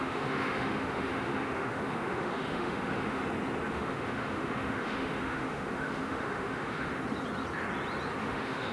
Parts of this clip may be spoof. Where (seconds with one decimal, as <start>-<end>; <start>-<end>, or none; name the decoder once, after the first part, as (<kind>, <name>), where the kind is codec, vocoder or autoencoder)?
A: 0.0-3.2 (autoencoder, DAC-VAE); 3.7-6.9; 8.2-8.7